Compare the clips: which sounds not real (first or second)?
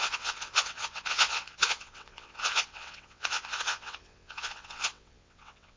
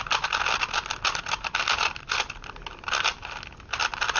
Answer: first